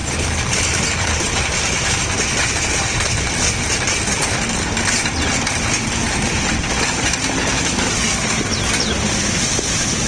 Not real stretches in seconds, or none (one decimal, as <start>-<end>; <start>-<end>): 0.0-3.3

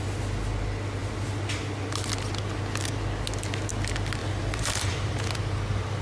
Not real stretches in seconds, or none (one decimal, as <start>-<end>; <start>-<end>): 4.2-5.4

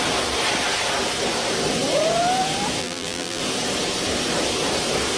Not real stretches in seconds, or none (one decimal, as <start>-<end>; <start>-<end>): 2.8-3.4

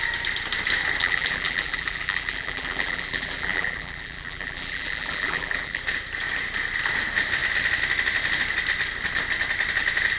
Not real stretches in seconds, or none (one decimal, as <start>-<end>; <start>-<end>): 1.0-5.8

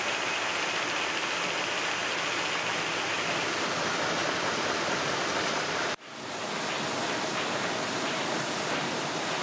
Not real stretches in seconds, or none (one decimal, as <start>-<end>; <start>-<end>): 4.2-6.6